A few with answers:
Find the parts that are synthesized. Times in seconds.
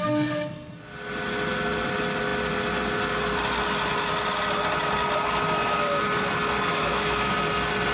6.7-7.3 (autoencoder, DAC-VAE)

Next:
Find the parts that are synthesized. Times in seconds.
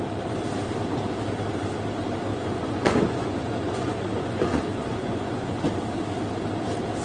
2.3-5.6 (vocoder, Vocos)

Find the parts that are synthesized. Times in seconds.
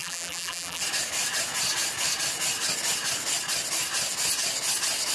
0.0-0.8 (vocoder, BigVGAN v2)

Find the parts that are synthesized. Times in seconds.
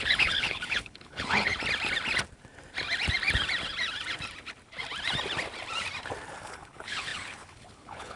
0.0-1.5 (codec, HILCodec); 6.4-8.2